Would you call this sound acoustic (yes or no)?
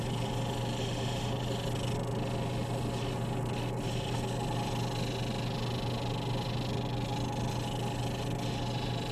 yes